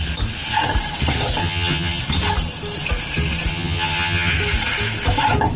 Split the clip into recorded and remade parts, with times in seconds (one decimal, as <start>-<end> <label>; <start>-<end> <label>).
0.0-1.4 recorded; 1.4-2.0 remade; 2.0-3.5 recorded; 3.5-4.3 remade; 4.3-5.6 recorded